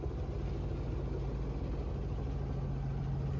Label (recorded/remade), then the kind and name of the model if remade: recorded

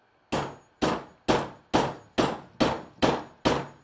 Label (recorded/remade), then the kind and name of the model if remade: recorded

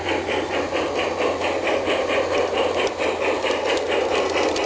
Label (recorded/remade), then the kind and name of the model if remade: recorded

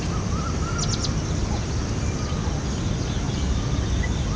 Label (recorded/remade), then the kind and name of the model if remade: recorded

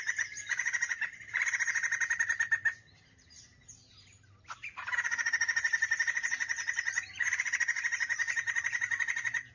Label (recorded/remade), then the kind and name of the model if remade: recorded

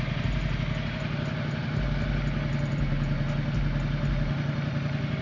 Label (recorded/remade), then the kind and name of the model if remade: recorded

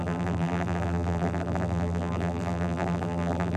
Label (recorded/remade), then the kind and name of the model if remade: remade, vocoder, BigVGAN v2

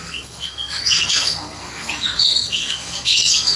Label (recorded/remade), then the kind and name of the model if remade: remade, codec, SNAC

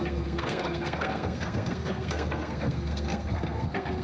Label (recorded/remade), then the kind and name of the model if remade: remade, codec, SNAC